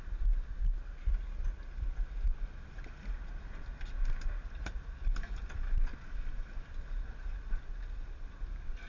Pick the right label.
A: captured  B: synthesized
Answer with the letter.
A